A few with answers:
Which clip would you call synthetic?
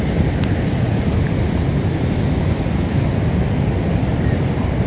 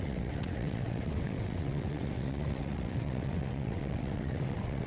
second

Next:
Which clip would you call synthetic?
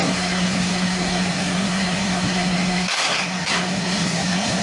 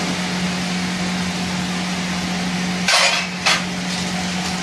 first